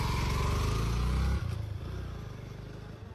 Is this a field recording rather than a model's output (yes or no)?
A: yes